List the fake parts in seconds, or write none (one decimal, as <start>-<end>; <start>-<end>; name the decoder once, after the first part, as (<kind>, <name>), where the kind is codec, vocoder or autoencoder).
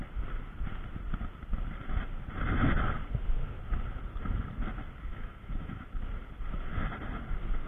5.1-5.9 (autoencoder, DAC-VAE)